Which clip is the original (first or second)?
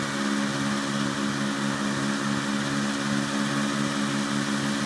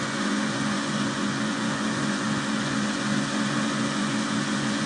first